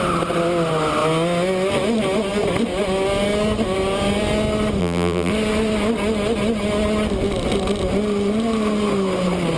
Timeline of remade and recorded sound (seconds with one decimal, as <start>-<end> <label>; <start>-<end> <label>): 0.0-4.8 recorded; 4.8-5.3 remade; 5.3-9.6 recorded